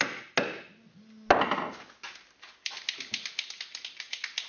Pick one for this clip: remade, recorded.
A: recorded